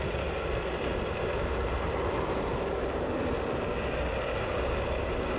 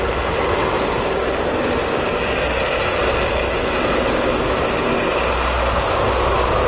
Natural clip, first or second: second